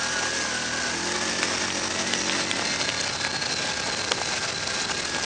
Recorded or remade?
recorded